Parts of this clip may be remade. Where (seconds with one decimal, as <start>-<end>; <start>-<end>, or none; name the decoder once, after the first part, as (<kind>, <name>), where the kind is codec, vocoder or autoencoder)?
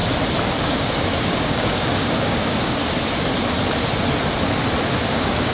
0.6-2.8 (codec, DAC); 5.1-5.5